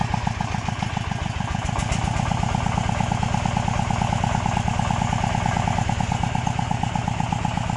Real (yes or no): yes